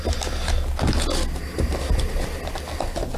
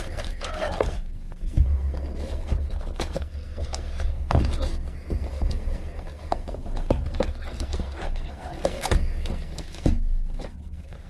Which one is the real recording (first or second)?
first